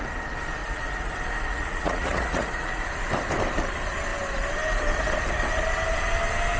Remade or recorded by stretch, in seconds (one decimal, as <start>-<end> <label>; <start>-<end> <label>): 0.0-0.6 recorded; 0.6-1.1 remade; 1.1-1.5 recorded; 1.5-2.8 remade; 2.8-6.6 recorded